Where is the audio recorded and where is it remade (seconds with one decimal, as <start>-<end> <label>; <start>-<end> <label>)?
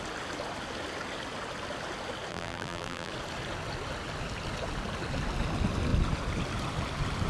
0.0-2.3 recorded; 2.3-3.1 remade; 3.1-7.3 recorded